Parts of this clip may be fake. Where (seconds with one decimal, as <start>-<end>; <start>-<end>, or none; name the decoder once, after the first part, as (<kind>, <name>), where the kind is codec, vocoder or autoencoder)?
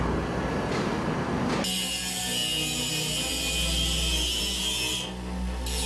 none